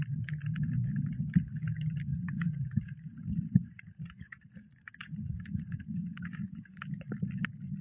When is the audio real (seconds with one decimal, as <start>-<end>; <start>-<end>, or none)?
0.0-2.1; 6.8-7.8